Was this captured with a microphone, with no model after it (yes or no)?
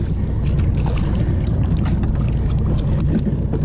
yes